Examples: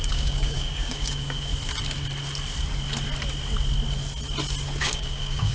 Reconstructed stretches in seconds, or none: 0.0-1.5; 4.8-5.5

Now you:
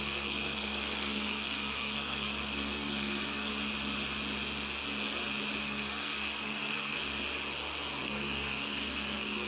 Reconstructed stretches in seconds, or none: 0.0-3.5; 5.6-7.0; 8.0-9.5

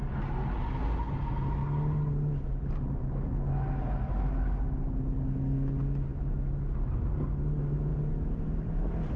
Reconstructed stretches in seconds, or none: none

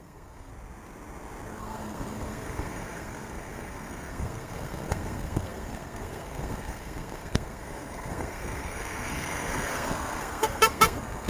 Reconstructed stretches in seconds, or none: 0.0-0.5; 1.6-11.3